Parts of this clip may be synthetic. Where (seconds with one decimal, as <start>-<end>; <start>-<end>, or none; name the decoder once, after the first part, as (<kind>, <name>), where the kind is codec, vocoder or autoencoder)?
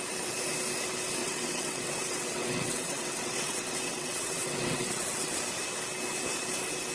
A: 1.2-5.3 (vocoder, WaveNeXt)